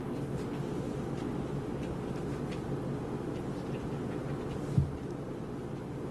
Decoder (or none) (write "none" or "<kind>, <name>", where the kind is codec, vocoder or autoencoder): none